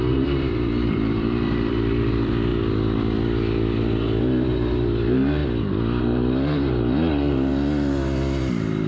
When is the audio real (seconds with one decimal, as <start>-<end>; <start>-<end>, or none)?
2.5-4.2; 5.4-6.0; 7.5-8.9